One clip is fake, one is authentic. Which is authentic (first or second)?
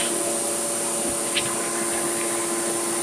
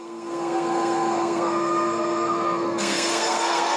first